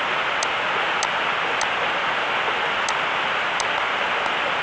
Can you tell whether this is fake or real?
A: real